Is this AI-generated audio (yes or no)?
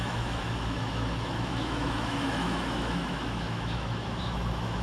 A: yes